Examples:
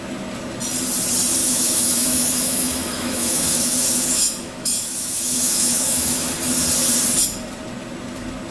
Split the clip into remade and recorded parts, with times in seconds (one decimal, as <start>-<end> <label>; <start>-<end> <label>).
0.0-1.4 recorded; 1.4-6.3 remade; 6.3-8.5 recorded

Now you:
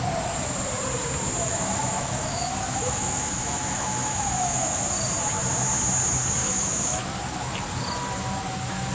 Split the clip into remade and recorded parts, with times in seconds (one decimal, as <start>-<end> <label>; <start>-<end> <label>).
0.0-1.4 recorded; 1.4-4.9 remade; 4.9-6.4 recorded; 6.4-7.0 remade; 7.0-8.9 recorded

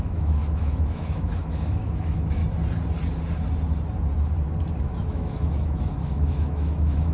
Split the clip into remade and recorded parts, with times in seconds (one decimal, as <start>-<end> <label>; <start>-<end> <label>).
0.0-2.4 remade; 2.4-4.8 recorded; 4.8-7.1 remade

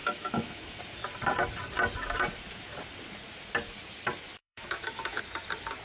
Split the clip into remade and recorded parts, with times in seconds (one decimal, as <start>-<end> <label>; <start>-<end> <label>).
0.0-0.8 remade; 0.8-4.4 recorded; 4.4-5.2 remade; 5.2-5.8 recorded

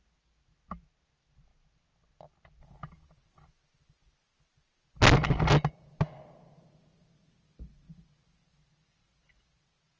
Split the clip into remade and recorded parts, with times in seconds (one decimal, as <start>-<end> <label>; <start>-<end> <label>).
0.0-10.0 recorded